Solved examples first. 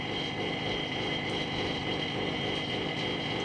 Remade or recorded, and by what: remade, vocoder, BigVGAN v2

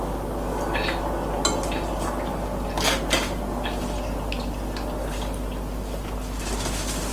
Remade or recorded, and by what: recorded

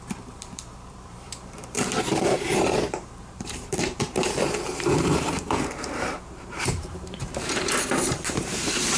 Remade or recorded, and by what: remade, vocoder, BigVGAN v2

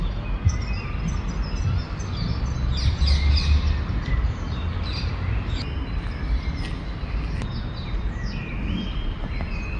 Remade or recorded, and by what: recorded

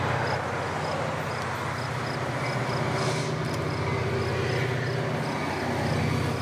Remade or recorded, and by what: recorded